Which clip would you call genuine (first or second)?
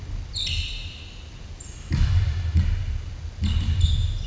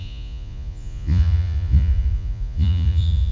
first